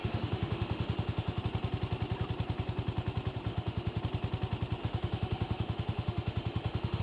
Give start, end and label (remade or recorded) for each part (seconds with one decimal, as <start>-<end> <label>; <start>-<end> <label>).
0.0-1.4 remade; 1.4-3.5 recorded; 3.5-4.0 remade; 4.0-4.8 recorded; 4.8-7.0 remade